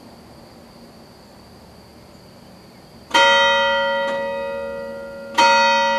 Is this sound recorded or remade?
recorded